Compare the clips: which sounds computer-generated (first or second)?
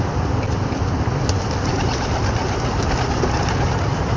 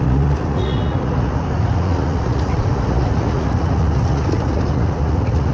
second